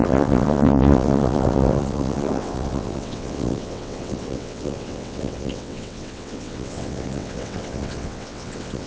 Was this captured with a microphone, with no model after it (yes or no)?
no